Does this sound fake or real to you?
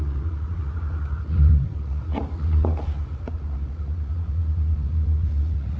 fake